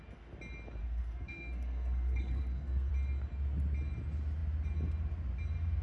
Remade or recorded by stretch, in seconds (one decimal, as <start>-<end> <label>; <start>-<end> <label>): 0.0-0.8 recorded; 0.8-2.9 remade; 2.9-5.8 recorded